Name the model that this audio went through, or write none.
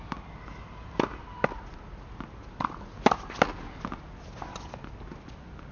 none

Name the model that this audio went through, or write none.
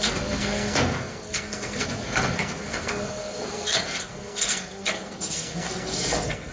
codec, SNAC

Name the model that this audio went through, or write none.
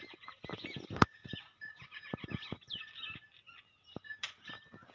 none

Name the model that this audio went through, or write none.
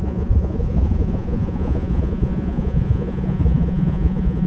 vocoder, Vocos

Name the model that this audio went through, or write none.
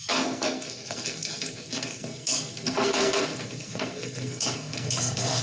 codec, SNAC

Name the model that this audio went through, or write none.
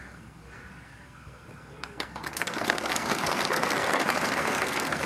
codec, SNAC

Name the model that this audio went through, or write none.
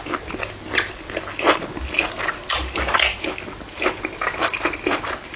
none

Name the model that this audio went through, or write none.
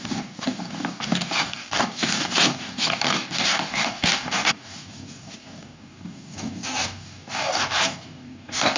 codec, DAC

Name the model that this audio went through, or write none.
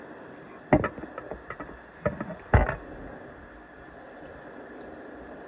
none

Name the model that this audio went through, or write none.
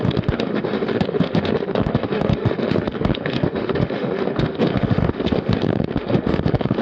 autoencoder, DAC-VAE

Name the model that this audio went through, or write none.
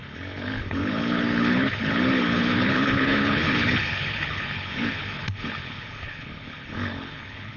codec, HILCodec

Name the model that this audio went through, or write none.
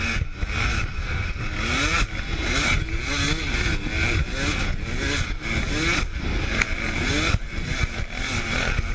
none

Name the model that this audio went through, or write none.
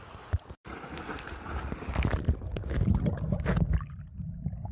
none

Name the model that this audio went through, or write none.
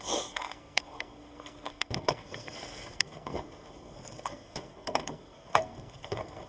codec, SNAC